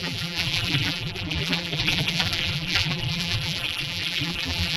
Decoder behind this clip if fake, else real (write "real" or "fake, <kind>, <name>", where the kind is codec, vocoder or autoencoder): fake, vocoder, BigVGAN v2